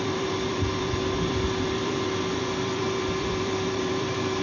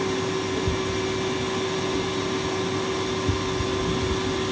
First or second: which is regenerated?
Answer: first